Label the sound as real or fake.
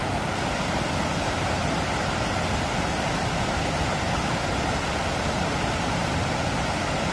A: real